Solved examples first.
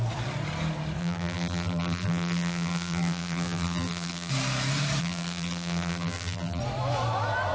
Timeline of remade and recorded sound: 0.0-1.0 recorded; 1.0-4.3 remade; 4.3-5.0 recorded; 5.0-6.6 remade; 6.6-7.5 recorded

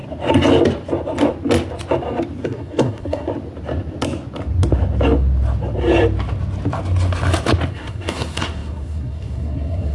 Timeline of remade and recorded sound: 0.0-2.4 recorded; 2.4-3.3 remade; 3.3-7.7 recorded; 7.7-9.9 remade

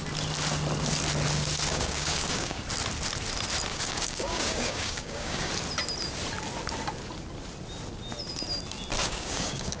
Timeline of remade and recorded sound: 0.0-1.7 recorded; 1.7-2.6 remade; 2.6-3.7 recorded; 3.7-5.5 remade; 5.5-9.0 recorded; 9.0-9.8 remade

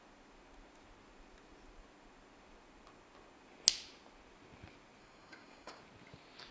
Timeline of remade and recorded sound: 0.0-5.0 recorded; 5.0-5.8 remade; 5.8-6.5 recorded

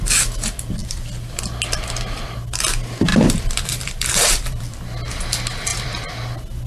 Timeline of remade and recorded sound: 0.0-0.8 recorded; 0.8-1.4 remade; 1.4-3.1 recorded; 3.1-4.7 remade; 4.7-5.7 recorded; 5.7-6.2 remade; 6.2-6.7 recorded